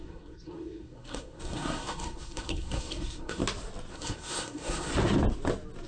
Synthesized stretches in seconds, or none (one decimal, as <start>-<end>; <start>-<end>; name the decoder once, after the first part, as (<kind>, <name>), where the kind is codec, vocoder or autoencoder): 0.0-3.4 (codec, SNAC); 3.9-4.9